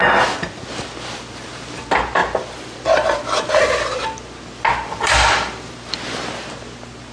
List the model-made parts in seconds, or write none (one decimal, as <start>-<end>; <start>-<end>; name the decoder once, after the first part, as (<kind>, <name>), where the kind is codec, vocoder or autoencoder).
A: 2.2-3.6 (vocoder, BigVGAN v2); 4.7-6.3